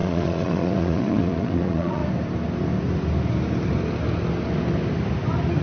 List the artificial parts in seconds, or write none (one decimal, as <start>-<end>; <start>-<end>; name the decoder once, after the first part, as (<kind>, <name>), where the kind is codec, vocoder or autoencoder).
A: 0.0-2.0 (vocoder, Vocos)